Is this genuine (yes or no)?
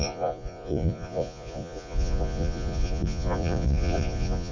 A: no